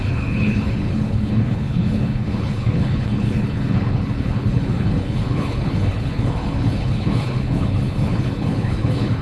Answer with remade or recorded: remade